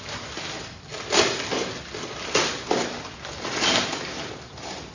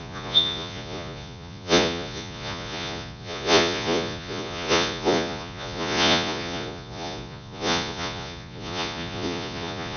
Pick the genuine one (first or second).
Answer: first